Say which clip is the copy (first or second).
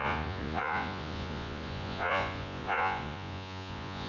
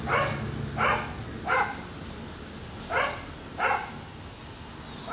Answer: first